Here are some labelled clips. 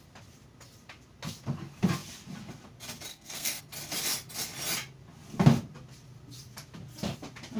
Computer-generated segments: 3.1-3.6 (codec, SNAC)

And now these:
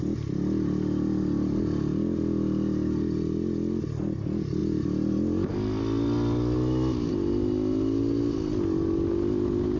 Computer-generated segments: none

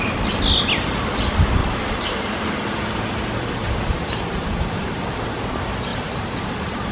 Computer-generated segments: 1.6-5.4 (vocoder, BigVGAN v2); 5.9-6.9

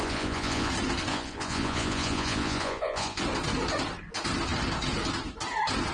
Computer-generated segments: 0.0-0.7 (vocoder, Vocos); 1.1-3.2

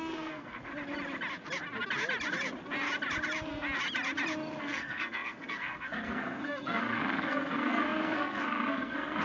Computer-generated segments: 0.0-0.7 (codec, SNAC); 4.6-9.2

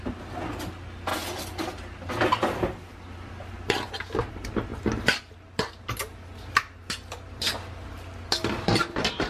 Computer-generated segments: 1.1-2.1 (vocoder, BigVGAN v2); 2.9-3.5; 6.8-7.9

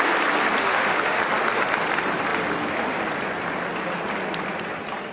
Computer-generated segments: 0.6-1.2 (autoencoder, DAC-VAE)

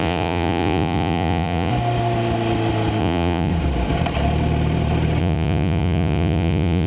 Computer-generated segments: 0.0-1.7 (vocoder, Vocos); 3.0-3.5; 5.2-6.9